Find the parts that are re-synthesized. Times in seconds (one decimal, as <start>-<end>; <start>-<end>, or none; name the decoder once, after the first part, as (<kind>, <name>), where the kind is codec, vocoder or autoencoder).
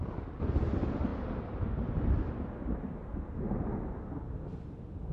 none